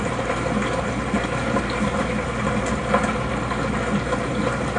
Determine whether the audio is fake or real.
real